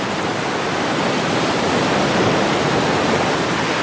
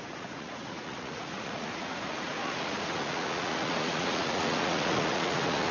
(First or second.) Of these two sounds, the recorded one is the first